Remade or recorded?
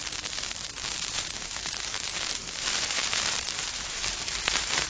remade